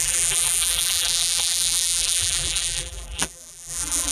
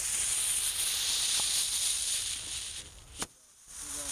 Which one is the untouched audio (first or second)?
second